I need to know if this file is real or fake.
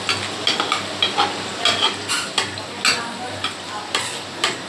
real